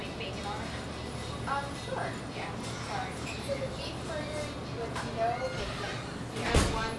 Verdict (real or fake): real